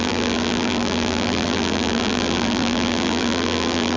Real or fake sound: fake